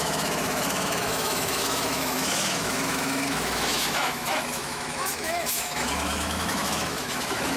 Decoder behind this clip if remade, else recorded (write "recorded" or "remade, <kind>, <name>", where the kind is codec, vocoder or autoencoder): remade, autoencoder, DAC-VAE